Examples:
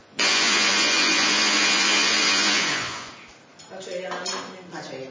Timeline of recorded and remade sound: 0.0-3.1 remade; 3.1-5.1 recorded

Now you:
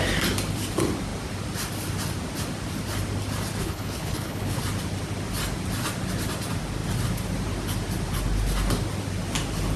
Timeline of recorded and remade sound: 0.0-3.6 recorded; 3.6-4.6 remade; 4.6-9.8 recorded

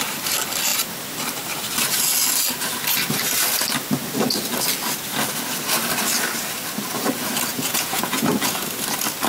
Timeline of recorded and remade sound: 0.0-7.5 recorded; 7.5-8.3 remade; 8.3-9.3 recorded

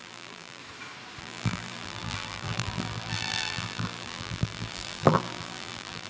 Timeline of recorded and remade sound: 0.0-0.6 remade; 0.6-1.2 recorded; 1.2-6.1 remade